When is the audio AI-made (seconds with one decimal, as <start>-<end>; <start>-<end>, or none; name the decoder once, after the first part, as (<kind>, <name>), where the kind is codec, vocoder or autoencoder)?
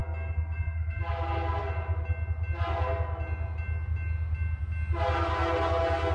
0.0-1.0 (codec, SNAC)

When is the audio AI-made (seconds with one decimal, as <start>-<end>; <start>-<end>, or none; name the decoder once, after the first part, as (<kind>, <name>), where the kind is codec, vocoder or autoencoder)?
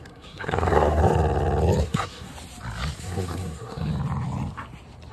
0.0-1.0 (codec, SNAC); 1.8-2.3; 3.0-3.9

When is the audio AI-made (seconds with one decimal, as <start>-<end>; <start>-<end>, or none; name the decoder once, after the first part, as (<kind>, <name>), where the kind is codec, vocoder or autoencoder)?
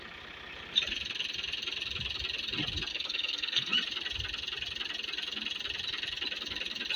2.9-3.7 (codec, SNAC)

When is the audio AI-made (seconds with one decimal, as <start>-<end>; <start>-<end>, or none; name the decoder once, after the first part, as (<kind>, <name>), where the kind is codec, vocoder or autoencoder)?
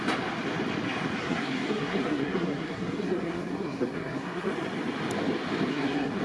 1.2-4.5 (codec, SNAC); 5.7-6.2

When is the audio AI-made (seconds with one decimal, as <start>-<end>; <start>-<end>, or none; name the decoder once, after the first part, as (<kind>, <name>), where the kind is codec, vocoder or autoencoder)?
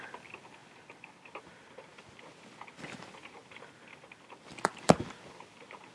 none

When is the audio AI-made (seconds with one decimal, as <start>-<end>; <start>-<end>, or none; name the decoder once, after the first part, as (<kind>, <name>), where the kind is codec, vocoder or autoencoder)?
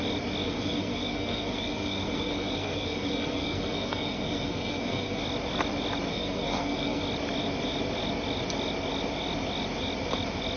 0.4-5.2 (codec, SNAC); 6.1-7.0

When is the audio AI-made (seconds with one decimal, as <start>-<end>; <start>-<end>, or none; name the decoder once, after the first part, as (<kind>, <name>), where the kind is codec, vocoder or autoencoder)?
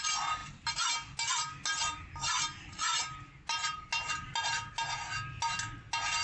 none